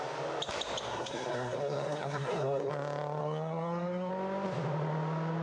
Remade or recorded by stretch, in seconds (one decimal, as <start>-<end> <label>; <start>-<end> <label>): 0.0-0.9 recorded; 0.9-2.7 remade; 2.7-3.2 recorded; 3.2-4.1 remade; 4.1-5.4 recorded